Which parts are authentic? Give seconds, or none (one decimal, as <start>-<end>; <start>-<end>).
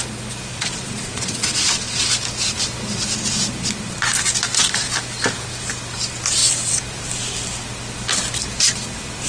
0.0-0.5; 2.0-9.3